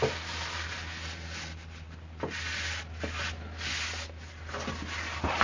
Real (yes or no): yes